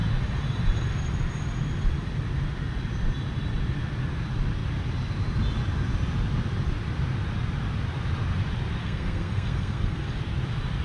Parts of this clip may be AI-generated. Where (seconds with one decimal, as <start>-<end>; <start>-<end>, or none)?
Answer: 8.8-10.2